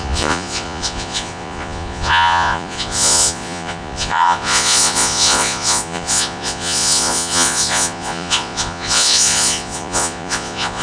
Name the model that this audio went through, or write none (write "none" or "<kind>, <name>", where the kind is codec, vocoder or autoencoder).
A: vocoder, Vocos